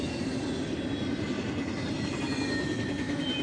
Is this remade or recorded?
recorded